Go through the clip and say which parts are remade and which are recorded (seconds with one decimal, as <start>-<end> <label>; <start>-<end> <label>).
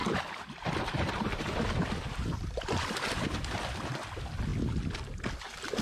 0.0-3.5 remade; 3.5-5.8 recorded